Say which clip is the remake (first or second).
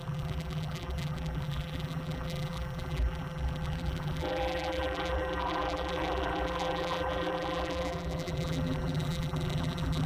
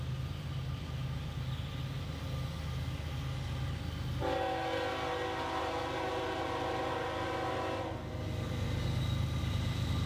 first